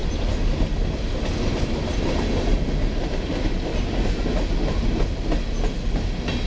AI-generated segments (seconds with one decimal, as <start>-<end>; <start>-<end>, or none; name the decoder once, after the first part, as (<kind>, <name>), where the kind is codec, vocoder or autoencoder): none